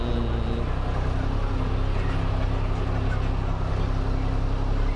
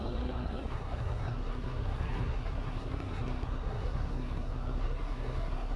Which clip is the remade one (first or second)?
second